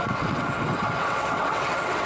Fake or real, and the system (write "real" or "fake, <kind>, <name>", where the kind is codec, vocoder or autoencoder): fake, vocoder, WaveNeXt